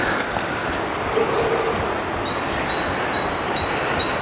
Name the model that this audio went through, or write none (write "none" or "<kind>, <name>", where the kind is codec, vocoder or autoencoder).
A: none